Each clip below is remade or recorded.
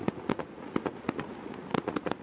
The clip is remade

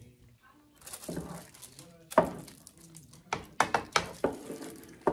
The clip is recorded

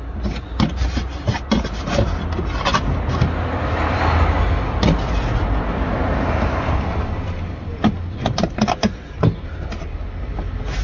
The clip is recorded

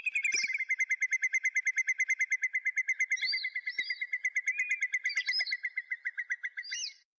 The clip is recorded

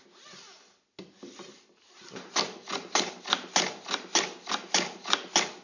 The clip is recorded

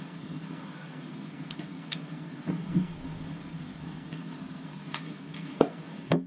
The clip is remade